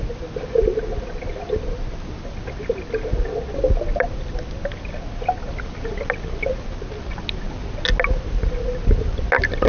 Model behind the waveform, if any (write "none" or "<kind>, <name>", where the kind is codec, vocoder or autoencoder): none